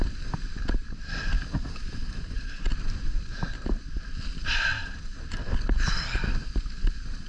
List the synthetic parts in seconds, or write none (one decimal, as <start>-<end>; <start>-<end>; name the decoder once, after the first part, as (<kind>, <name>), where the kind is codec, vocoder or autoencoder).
none